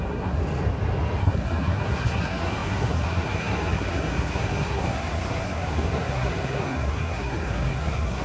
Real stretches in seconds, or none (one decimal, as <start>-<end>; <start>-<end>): 0.4-1.2